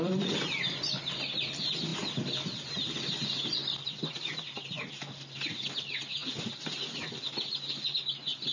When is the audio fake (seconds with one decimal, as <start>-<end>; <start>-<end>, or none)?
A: 0.0-1.9; 2.7-6.2; 7.7-8.5